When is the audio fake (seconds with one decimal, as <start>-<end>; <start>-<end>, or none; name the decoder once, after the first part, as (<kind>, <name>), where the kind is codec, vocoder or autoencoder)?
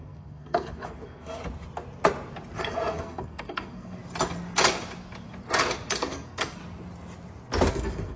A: 0.0-1.4 (codec, SNAC); 2.6-4.0; 6.0-6.6; 7.7-8.2